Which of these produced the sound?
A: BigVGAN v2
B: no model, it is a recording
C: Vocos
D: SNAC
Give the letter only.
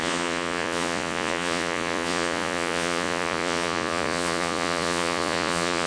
C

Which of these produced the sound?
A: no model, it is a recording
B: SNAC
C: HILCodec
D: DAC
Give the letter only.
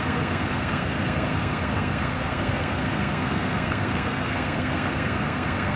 B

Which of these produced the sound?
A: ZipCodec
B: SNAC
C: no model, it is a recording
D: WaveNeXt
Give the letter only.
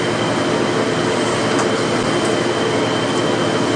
C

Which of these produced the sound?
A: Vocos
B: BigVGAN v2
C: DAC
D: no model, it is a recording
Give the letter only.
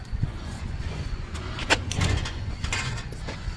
A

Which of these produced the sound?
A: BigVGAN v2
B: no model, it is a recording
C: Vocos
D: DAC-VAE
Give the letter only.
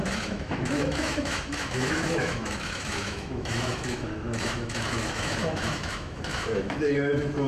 D